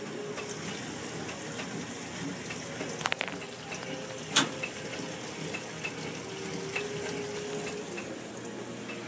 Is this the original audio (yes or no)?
yes